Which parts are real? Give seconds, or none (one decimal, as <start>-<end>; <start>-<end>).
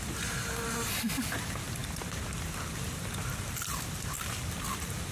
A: 0.0-1.8